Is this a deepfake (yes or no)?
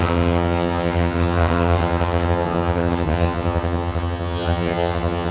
yes